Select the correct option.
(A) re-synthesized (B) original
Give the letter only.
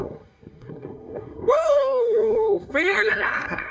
A